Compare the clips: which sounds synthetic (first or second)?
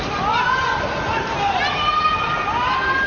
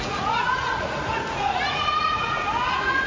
second